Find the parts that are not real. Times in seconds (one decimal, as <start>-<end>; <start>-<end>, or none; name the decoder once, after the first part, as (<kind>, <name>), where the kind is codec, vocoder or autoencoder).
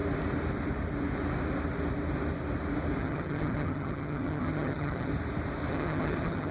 3.0-5.1 (vocoder, HiFi-GAN); 5.7-6.5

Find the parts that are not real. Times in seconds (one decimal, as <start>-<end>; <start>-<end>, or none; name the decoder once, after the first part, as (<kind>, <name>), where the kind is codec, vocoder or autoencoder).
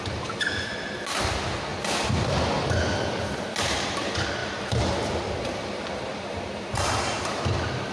4.4-4.9 (vocoder, BigVGAN v2); 6.1-7.3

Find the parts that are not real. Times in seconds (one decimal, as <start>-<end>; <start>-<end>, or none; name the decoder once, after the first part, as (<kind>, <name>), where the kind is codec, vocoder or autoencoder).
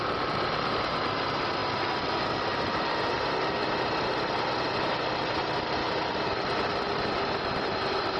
none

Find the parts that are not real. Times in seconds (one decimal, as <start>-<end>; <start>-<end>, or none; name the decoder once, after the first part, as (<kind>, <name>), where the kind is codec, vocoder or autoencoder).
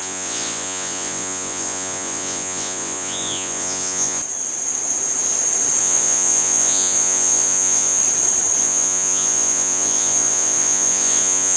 0.0-4.2 (vocoder, Vocos); 5.8-8.0; 8.6-11.6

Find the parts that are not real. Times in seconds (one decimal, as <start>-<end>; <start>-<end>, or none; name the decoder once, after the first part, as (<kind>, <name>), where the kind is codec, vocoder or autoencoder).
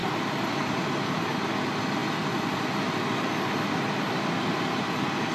0.0-0.8 (vocoder, BigVGAN v2)